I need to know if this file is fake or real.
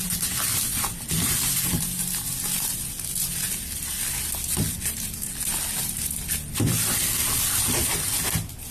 fake